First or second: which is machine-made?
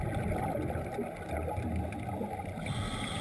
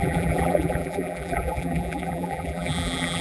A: second